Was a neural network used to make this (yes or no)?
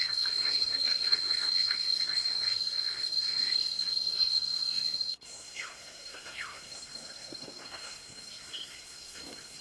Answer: yes